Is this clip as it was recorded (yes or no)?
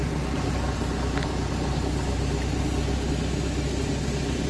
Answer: yes